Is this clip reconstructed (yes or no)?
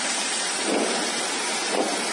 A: no